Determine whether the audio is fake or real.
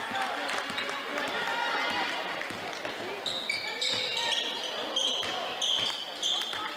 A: real